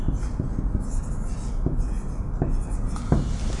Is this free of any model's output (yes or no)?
yes